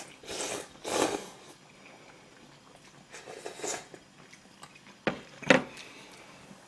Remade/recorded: recorded